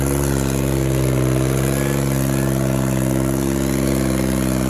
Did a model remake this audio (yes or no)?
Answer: no